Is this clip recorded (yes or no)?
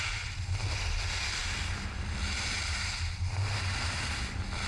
yes